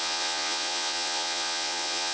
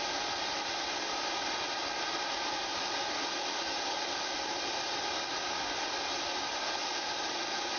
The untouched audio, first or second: second